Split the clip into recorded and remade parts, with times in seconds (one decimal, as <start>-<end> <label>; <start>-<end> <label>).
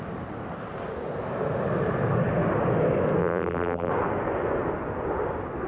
0.0-3.2 recorded; 3.2-3.9 remade; 3.9-5.7 recorded